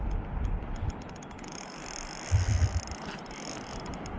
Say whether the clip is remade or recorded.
recorded